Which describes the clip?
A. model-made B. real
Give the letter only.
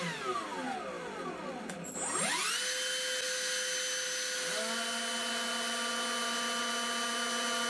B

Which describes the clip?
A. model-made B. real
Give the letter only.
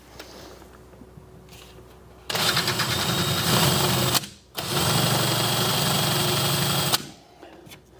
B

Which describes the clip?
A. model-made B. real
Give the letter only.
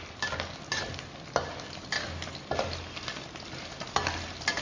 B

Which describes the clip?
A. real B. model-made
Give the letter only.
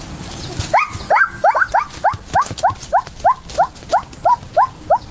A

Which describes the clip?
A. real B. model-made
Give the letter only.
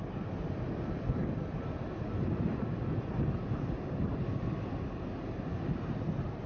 B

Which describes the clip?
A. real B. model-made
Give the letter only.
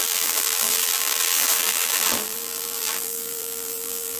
B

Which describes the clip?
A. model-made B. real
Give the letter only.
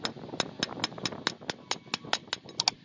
B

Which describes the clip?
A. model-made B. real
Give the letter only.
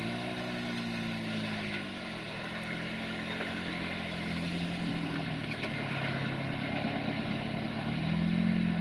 B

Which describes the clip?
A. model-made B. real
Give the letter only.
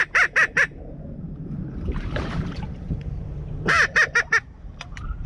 A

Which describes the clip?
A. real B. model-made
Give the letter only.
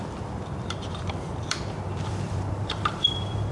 B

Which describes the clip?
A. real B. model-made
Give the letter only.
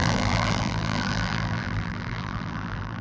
B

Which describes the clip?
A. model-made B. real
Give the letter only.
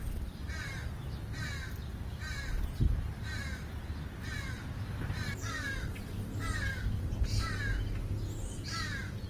B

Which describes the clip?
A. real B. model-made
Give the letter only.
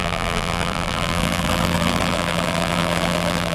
B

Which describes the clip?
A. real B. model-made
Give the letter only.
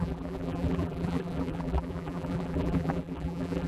B